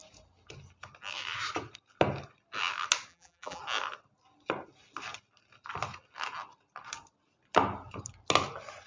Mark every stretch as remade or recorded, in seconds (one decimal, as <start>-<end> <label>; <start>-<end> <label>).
0.0-3.1 recorded; 3.1-3.6 remade; 3.6-8.9 recorded